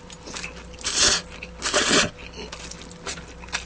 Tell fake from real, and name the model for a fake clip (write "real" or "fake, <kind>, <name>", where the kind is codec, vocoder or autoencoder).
real